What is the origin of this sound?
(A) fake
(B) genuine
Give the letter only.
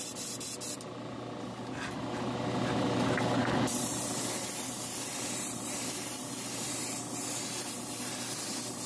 B